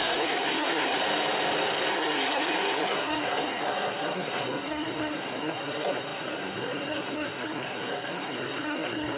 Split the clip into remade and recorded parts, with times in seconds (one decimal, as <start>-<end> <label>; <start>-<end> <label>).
0.0-1.0 remade; 1.0-1.9 recorded; 1.9-9.2 remade